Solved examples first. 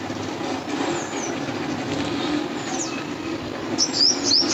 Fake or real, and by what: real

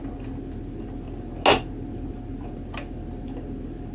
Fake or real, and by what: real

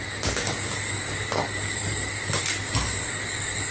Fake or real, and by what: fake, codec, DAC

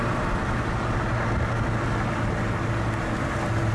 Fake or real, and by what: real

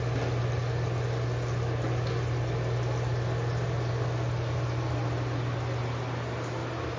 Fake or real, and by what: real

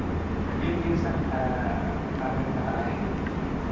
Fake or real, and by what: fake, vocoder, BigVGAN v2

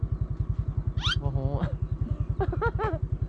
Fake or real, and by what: real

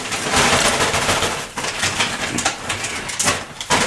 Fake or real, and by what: real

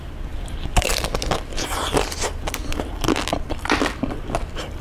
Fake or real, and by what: real